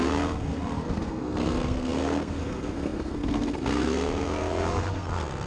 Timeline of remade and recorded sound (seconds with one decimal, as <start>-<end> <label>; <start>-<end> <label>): 0.0-5.5 remade